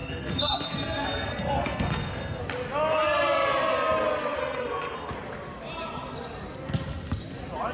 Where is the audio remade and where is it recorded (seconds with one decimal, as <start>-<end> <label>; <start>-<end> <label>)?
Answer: 0.0-2.4 remade; 2.4-4.4 recorded; 4.4-5.1 remade; 5.1-7.7 recorded